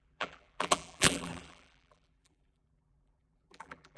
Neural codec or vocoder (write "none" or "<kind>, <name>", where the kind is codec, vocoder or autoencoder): vocoder, BigVGAN v2